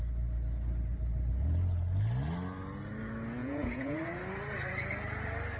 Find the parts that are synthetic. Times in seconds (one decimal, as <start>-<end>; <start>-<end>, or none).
3.4-4.0